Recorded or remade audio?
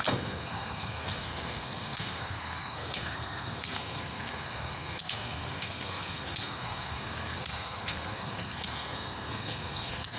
remade